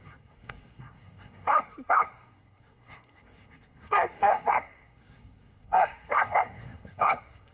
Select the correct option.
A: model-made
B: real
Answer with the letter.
A